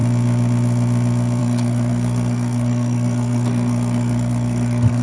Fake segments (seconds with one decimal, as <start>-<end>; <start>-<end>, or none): 1.4-5.0